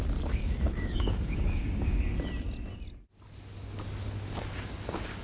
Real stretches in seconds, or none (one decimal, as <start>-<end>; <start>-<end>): 0.0-0.4; 2.0-5.2